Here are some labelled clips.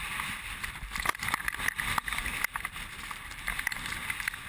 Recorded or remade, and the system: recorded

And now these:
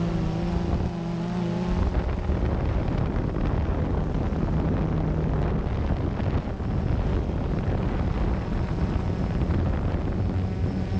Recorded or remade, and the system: recorded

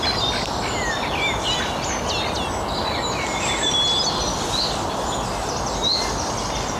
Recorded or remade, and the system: recorded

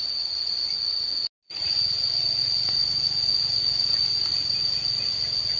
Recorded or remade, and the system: recorded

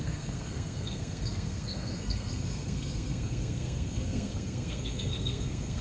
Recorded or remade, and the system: remade, codec, SNAC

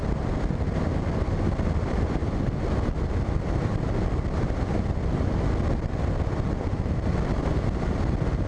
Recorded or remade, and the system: recorded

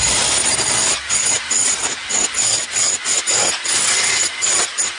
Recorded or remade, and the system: recorded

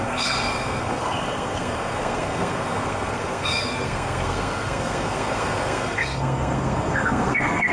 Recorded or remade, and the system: remade, codec, SNAC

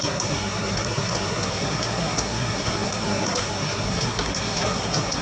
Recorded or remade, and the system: remade, codec, SNAC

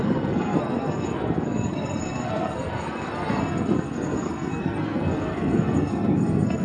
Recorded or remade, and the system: remade, codec, SNAC